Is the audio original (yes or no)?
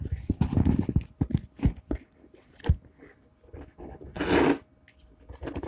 yes